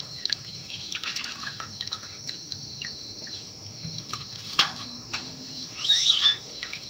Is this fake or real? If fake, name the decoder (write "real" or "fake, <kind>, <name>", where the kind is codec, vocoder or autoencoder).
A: fake, autoencoder, DAC-VAE